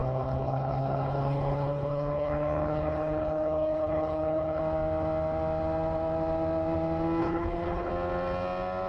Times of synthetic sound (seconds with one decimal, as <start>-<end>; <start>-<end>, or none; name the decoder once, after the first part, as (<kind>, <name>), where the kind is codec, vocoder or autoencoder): 0.0-4.6 (codec, HILCodec); 7.2-7.9